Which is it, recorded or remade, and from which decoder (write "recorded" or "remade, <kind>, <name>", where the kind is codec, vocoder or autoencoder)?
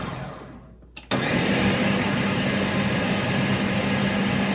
recorded